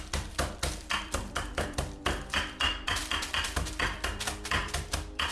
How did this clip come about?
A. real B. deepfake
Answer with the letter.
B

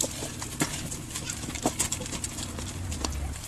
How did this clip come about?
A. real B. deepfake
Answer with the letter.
A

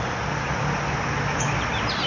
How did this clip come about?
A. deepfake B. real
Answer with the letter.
B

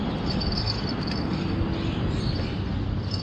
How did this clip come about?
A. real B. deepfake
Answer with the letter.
A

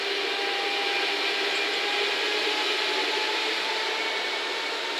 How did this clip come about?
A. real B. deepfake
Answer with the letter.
A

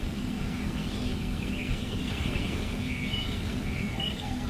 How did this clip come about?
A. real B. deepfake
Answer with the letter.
B